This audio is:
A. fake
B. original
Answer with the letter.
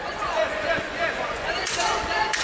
A